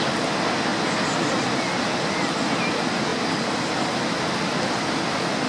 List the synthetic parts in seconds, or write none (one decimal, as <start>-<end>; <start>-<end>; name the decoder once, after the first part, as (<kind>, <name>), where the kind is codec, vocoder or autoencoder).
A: none